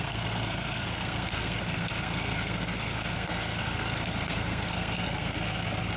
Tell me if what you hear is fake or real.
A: fake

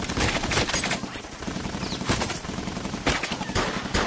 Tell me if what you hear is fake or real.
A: real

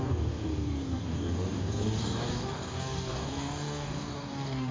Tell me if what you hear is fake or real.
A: fake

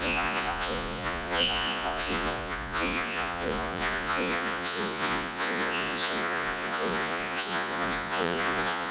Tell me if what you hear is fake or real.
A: fake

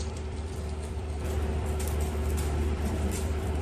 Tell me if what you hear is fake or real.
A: fake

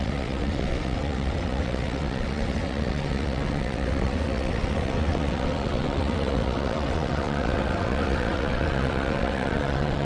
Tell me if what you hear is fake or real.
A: fake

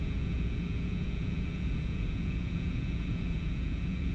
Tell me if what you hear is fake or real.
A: fake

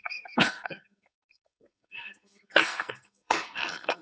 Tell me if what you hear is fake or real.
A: fake